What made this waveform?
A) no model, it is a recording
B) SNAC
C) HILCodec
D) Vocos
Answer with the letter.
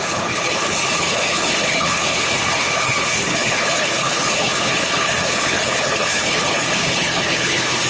C